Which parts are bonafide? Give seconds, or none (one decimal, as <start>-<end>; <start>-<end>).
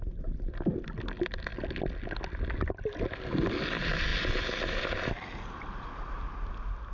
0.0-6.9